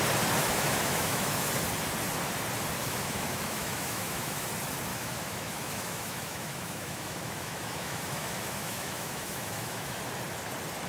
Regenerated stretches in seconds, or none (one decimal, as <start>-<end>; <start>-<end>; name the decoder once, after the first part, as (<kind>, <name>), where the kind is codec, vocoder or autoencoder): 0.4-1.5 (autoencoder, DAC-VAE); 2.8-4.5; 4.9-10.0